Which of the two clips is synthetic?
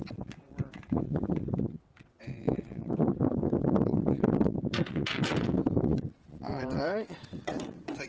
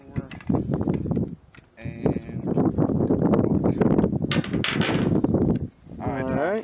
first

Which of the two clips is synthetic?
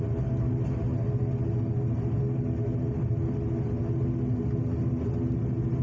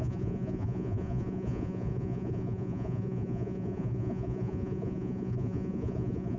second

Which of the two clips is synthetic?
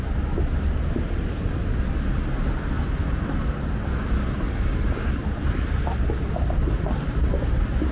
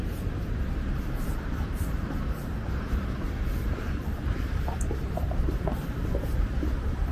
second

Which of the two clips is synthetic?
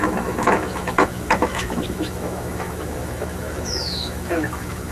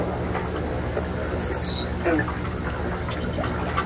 first